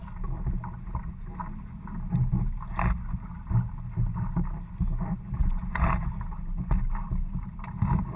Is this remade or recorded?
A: recorded